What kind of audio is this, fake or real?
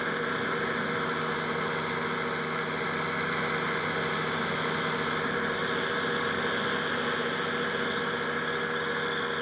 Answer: real